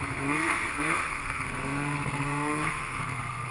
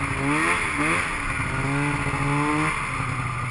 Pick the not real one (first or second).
first